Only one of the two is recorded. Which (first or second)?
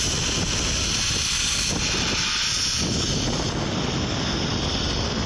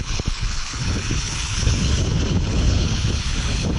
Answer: first